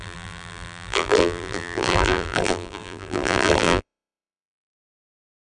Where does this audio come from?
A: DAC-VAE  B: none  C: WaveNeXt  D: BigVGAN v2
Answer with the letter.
D